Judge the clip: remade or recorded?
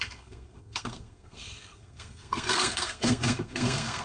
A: remade